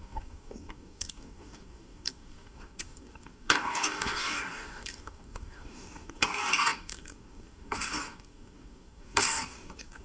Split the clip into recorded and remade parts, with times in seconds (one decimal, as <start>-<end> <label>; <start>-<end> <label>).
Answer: 0.0-10.0 remade